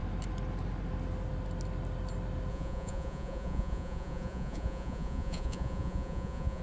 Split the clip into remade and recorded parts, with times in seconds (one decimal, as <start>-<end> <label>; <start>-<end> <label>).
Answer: 0.0-2.5 recorded; 2.5-6.6 remade